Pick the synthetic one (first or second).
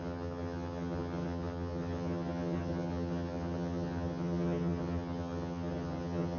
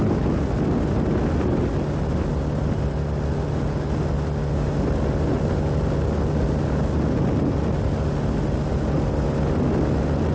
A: first